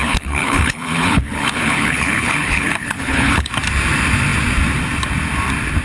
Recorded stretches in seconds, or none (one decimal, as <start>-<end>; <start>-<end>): 3.5-5.8